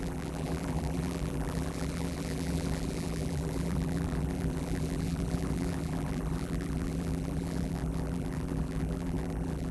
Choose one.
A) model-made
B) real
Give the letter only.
A